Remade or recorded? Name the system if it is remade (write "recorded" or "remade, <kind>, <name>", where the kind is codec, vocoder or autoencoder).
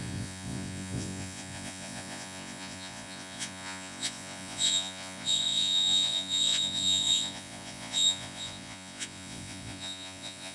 remade, vocoder, Vocos